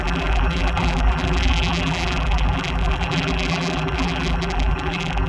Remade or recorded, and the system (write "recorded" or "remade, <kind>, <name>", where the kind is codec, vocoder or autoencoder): remade, vocoder, BigVGAN v2